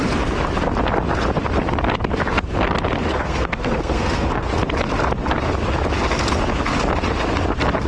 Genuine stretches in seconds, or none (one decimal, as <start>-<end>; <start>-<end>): 0.0-3.1; 4.5-7.9